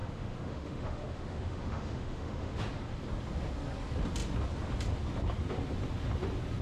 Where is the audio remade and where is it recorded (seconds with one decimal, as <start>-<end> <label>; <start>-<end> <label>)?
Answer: 0.0-2.6 remade; 2.6-6.6 recorded